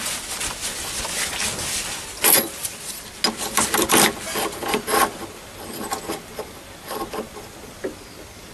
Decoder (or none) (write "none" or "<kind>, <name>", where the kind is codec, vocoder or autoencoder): none